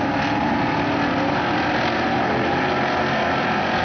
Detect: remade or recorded recorded